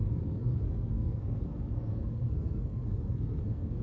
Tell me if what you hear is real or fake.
fake